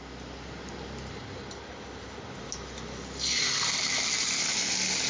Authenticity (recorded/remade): recorded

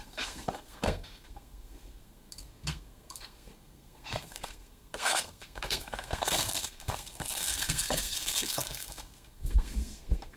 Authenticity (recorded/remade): remade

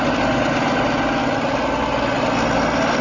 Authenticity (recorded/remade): recorded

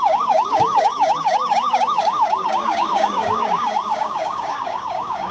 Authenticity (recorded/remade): remade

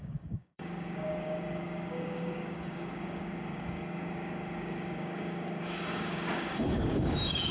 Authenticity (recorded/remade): remade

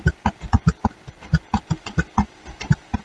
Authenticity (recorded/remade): recorded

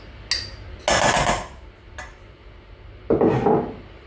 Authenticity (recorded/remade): recorded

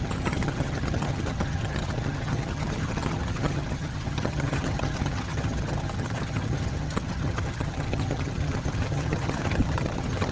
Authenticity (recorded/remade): remade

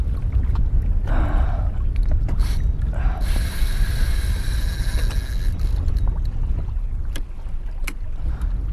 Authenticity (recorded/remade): recorded